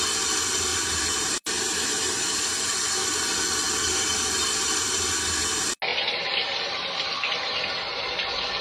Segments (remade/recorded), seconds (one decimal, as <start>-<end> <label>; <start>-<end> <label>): 0.0-0.7 recorded; 0.7-2.4 remade; 2.4-4.4 recorded; 4.4-5.1 remade; 5.1-5.9 recorded; 5.9-7.6 remade; 7.6-8.6 recorded